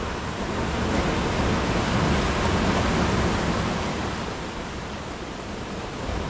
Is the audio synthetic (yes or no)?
no